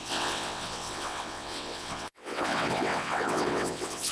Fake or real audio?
fake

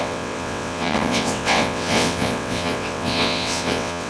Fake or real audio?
fake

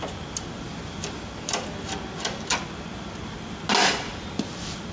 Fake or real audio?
real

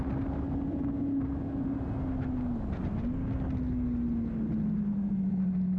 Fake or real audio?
real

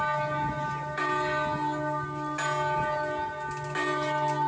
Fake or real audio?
real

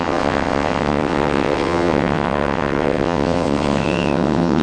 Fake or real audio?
fake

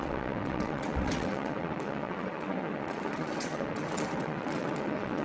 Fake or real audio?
fake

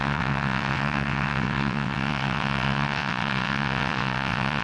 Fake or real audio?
fake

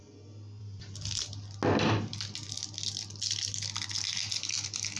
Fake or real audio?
real